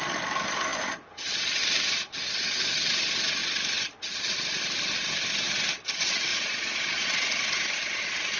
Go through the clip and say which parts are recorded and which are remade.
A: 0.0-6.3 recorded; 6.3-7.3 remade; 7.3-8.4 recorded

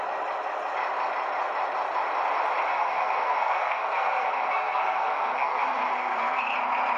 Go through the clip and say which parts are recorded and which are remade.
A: 0.0-2.7 recorded; 2.7-6.4 remade; 6.4-7.0 recorded

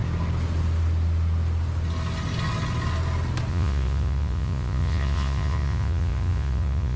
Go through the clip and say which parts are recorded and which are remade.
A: 0.0-3.5 recorded; 3.5-7.0 remade

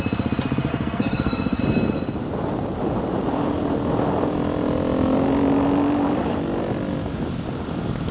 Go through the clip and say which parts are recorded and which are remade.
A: 0.0-0.7 recorded; 0.7-1.6 remade; 1.6-8.1 recorded